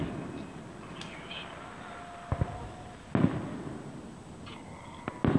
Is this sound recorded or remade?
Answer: recorded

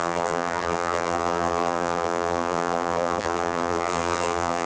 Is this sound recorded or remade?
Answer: remade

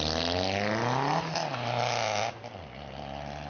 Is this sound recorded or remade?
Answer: recorded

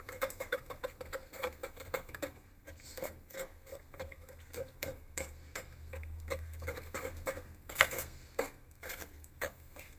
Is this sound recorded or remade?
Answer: remade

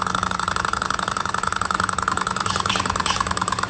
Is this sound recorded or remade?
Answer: remade